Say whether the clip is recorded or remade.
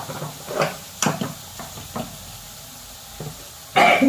recorded